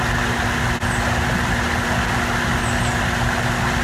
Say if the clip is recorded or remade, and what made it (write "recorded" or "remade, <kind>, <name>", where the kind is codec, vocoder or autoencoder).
recorded